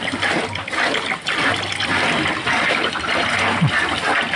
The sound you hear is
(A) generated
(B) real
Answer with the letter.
B